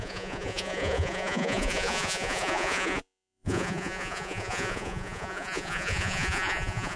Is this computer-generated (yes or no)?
yes